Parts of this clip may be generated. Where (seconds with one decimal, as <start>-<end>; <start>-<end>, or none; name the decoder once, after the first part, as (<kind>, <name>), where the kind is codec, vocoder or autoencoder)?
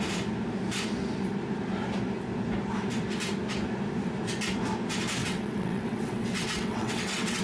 5.2-7.4 (vocoder, WaveNeXt)